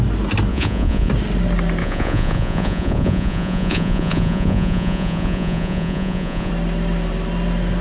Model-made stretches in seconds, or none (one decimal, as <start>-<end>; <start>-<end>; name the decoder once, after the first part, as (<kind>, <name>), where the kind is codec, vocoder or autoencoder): 0.5-1.1 (vocoder, Vocos); 1.8-6.5